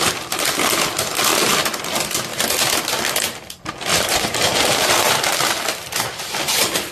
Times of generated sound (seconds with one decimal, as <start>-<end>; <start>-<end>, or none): 3.9-5.1